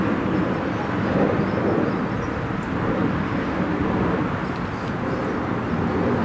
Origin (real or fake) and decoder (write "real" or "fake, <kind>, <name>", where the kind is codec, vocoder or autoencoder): real